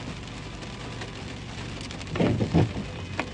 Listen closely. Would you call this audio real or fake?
real